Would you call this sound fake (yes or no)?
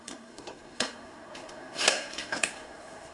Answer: yes